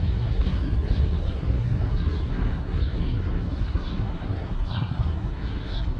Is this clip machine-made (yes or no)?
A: yes